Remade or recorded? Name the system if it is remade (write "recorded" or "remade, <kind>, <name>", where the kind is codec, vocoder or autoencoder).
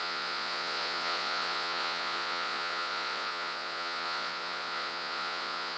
remade, vocoder, Vocos